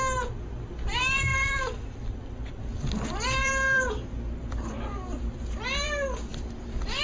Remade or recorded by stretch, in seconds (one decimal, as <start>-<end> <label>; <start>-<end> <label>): 0.0-1.3 recorded; 1.3-2.6 remade; 2.6-3.4 recorded; 3.4-5.4 remade; 5.4-6.3 recorded; 6.3-7.0 remade